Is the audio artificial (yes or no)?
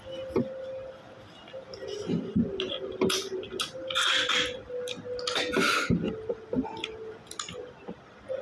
no